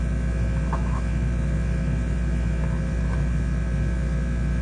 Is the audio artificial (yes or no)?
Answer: no